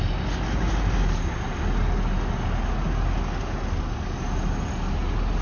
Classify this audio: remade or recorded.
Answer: recorded